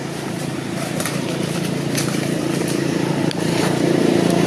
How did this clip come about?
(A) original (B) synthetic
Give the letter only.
B